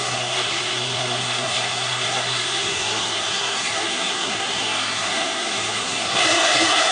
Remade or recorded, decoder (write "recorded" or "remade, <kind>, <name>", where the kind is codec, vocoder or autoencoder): remade, codec, SNAC